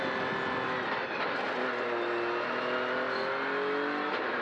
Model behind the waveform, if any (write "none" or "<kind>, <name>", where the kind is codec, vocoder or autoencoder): none